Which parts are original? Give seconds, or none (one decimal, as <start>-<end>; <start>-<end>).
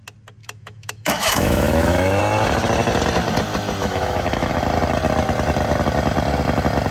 0.0-0.4; 2.2-3.8; 4.5-6.9